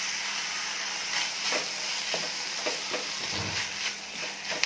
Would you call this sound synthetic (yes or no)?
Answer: no